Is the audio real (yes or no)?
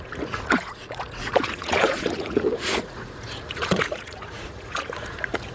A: no